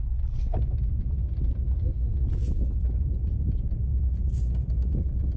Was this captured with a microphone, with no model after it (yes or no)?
yes